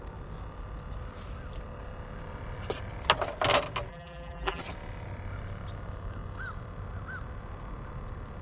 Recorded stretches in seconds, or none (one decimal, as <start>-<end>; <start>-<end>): 0.0-3.9; 4.6-8.4